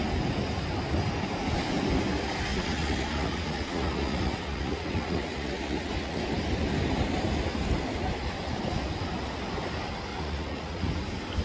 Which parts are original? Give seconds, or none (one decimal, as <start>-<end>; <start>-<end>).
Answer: 0.0-2.5; 6.2-10.1; 10.9-11.4